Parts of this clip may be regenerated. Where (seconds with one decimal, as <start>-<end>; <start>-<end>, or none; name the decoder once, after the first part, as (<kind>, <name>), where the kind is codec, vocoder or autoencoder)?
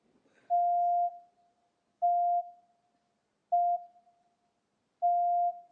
1.9-2.5 (autoencoder, DAC-VAE)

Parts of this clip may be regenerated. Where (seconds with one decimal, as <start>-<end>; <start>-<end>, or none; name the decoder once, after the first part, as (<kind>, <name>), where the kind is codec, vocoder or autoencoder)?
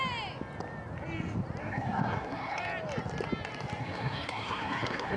1.6-2.6 (codec, SNAC); 3.8-5.2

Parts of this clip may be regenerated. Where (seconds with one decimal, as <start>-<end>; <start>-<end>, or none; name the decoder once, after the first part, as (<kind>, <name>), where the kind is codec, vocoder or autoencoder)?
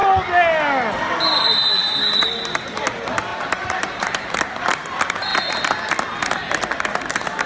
3.3-4.3 (vocoder, BigVGAN v2)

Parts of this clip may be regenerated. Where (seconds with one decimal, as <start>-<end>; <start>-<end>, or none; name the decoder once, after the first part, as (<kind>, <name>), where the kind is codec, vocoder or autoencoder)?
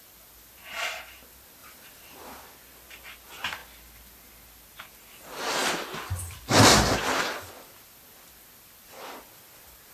1.6-2.4 (vocoder, BigVGAN v2)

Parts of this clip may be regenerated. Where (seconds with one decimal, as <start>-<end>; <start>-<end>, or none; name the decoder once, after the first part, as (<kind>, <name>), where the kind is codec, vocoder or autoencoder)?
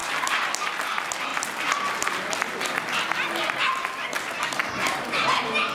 0.0-0.7 (vocoder, BigVGAN v2)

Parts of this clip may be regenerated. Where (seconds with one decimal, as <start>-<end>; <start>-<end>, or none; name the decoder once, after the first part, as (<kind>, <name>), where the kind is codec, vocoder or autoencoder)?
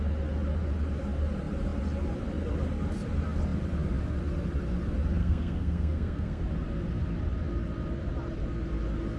5.2-6.4 (codec, SNAC)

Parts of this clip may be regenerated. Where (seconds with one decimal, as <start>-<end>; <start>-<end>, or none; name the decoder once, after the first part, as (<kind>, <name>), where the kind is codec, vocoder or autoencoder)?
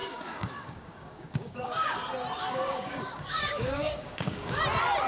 0.0-2.0 (codec, DAC); 2.4-4.6